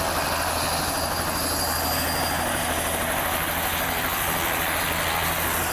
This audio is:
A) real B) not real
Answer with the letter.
A